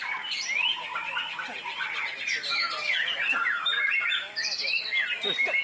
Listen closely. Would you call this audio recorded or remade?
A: recorded